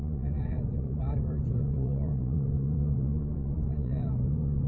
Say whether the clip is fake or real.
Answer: fake